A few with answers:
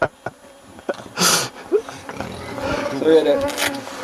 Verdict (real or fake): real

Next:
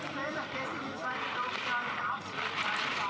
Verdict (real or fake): real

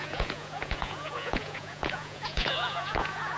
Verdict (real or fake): fake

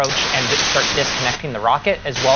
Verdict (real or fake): real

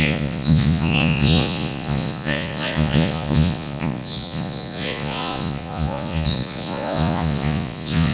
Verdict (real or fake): fake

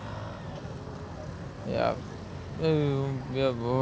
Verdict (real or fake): real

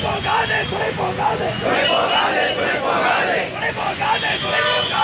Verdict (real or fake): fake